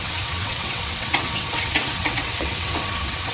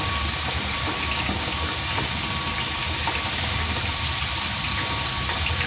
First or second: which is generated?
first